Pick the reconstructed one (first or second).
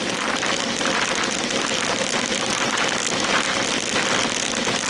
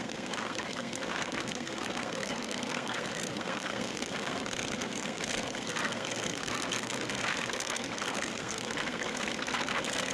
second